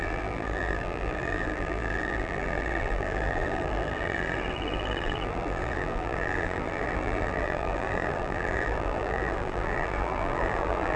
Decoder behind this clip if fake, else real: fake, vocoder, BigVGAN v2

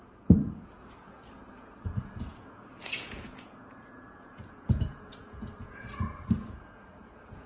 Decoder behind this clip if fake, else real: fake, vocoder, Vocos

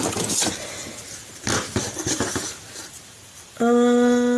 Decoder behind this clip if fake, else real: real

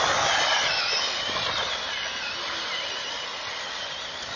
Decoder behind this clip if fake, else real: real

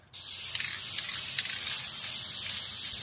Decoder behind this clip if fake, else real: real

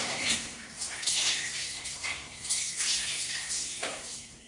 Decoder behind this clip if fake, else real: fake, codec, SNAC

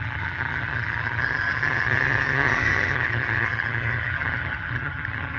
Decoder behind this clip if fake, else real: fake, vocoder, HiFi-GAN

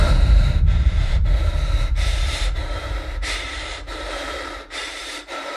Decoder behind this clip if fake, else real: fake, vocoder, BigVGAN v2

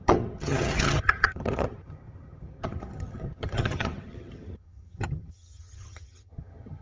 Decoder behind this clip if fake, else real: fake, vocoder, HiFi-GAN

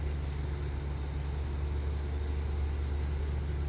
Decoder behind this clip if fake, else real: real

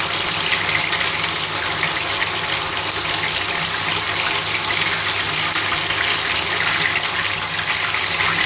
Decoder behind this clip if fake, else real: real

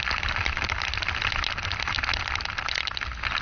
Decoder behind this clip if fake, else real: real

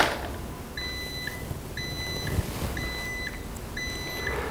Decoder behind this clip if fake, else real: real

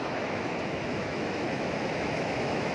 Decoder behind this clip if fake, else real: fake, autoencoder, DAC-VAE